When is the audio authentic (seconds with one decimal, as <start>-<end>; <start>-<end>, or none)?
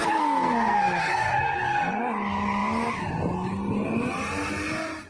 2.0-5.1